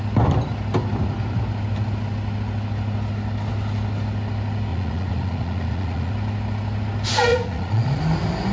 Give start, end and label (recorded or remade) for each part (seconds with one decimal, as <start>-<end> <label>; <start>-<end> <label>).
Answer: 0.0-4.7 recorded; 4.7-6.1 remade; 6.1-7.3 recorded; 7.3-8.0 remade; 8.0-8.5 recorded

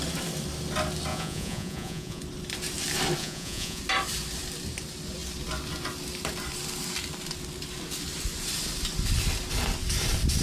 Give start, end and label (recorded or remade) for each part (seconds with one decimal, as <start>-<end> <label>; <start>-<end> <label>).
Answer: 0.0-1.1 recorded; 1.1-2.2 remade; 2.2-3.2 recorded; 3.2-3.8 remade; 3.8-10.4 recorded

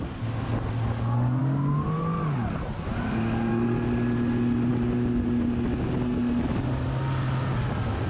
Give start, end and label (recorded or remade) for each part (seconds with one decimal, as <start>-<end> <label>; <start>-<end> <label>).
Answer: 0.0-8.1 recorded

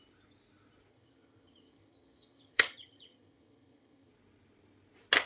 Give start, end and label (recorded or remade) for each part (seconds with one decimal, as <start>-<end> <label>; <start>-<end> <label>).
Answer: 0.0-0.9 recorded; 0.9-4.1 remade; 4.1-5.3 recorded

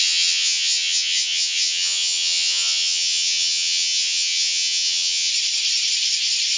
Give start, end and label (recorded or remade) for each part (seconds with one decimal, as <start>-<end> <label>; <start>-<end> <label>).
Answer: 0.0-5.3 remade; 5.3-6.6 recorded

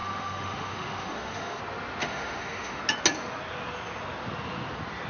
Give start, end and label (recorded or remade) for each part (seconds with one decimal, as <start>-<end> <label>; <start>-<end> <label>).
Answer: 0.0-1.6 remade; 1.6-2.0 recorded; 2.0-2.8 remade; 2.8-5.1 recorded

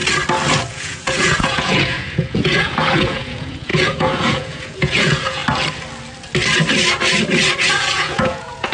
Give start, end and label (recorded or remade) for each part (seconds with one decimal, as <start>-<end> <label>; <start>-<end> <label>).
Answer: 0.0-0.7 recorded; 0.7-5.4 remade; 5.4-7.7 recorded; 7.7-8.7 remade